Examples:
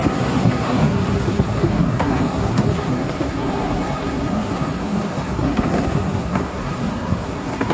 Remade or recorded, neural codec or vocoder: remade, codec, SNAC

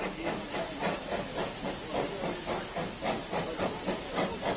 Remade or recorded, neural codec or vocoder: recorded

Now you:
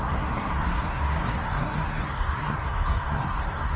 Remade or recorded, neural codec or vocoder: remade, codec, SNAC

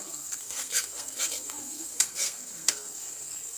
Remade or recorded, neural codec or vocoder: remade, codec, SNAC